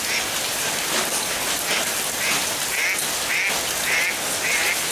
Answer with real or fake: real